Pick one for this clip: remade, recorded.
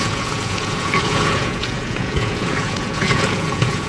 remade